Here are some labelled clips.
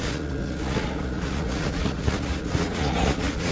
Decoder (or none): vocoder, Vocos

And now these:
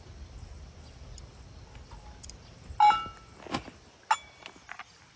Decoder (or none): none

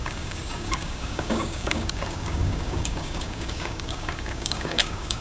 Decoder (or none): codec, DAC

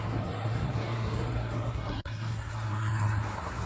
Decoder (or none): codec, SNAC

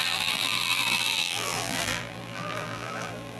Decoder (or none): vocoder, BigVGAN v2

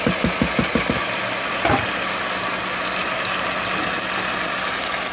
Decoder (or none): none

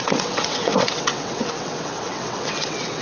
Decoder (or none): vocoder, WaveNeXt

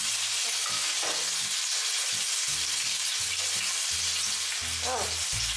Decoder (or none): none